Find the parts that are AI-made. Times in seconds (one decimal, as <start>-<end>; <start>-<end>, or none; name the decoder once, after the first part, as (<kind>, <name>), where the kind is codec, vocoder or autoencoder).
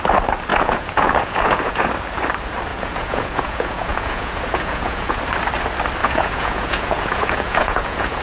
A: 0.5-1.9 (vocoder, Vocos); 2.7-5.2; 6.0-8.2